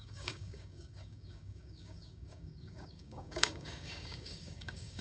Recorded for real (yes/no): no